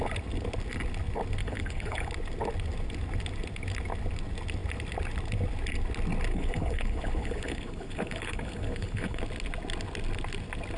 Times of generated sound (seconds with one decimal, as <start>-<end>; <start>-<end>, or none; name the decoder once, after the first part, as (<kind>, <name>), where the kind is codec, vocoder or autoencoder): 1.4-2.1 (codec, HILCodec); 6.3-9.2